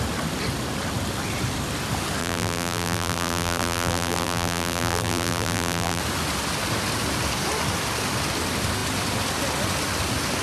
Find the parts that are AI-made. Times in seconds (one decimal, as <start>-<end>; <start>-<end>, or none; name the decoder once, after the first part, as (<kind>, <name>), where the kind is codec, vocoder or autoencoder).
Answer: 2.2-6.0 (vocoder, BigVGAN v2)